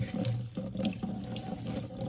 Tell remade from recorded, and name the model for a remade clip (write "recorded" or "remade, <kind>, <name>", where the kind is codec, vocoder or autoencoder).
remade, vocoder, BigVGAN v2